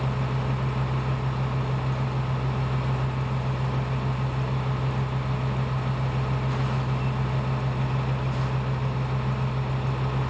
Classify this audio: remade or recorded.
recorded